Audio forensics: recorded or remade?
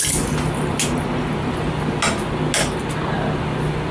recorded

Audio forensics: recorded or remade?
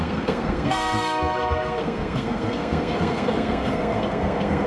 remade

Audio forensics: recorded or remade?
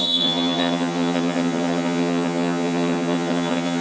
remade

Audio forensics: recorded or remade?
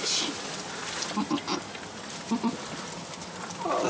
recorded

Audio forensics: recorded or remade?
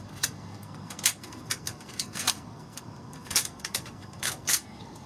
remade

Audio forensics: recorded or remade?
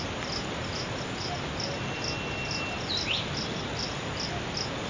recorded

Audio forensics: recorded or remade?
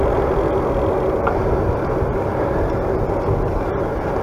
recorded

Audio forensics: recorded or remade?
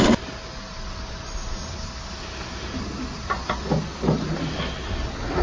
recorded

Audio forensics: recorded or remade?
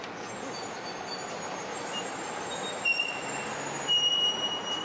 recorded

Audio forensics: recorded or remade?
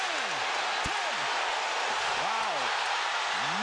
recorded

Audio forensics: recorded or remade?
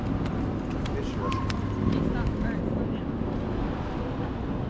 recorded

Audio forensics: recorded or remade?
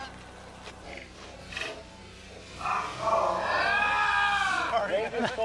recorded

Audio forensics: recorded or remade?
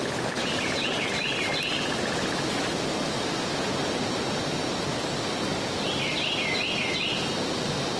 recorded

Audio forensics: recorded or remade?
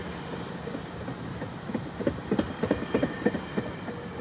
recorded